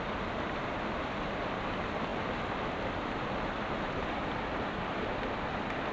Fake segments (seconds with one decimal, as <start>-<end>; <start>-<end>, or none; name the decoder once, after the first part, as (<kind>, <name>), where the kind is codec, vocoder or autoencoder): none